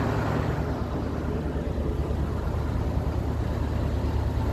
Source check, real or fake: real